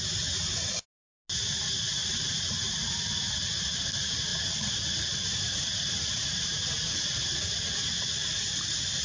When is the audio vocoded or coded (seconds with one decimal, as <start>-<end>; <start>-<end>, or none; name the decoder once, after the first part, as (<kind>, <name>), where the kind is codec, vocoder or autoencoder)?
none

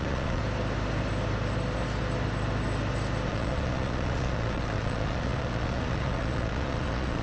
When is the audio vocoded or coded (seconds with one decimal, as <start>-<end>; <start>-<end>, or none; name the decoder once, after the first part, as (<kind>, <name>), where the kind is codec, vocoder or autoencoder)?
0.0-0.4 (vocoder, Vocos); 3.3-7.2

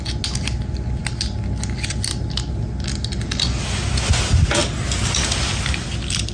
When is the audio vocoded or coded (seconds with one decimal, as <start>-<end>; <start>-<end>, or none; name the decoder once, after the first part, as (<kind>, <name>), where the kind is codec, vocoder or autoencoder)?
none

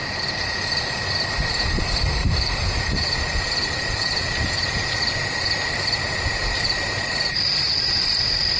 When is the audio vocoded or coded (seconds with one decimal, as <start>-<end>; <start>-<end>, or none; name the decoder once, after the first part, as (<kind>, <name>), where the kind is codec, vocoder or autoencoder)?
2.2-5.0 (vocoder, Vocos); 6.0-6.5

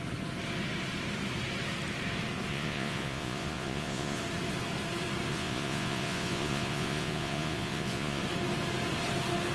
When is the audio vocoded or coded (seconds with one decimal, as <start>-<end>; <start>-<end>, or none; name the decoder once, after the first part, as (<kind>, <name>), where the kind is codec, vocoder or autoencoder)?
2.5-4.2 (vocoder, Vocos); 5.3-8.2